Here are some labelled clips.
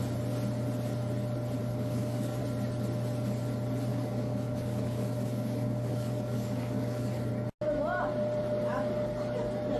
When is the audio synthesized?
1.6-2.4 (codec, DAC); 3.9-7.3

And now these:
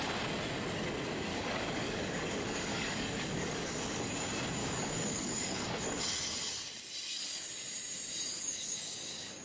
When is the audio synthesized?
1.3-4.0 (codec, DAC); 4.6-6.0; 8.3-9.4

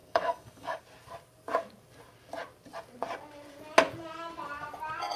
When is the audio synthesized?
0.0-0.8 (codec, DAC)

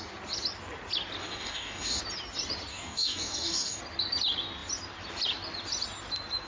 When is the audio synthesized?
1.2-2.0 (codec, DAC); 2.7-3.8

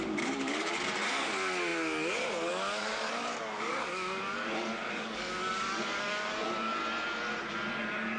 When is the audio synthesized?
0.0-6.8 (codec, DAC); 7.7-8.2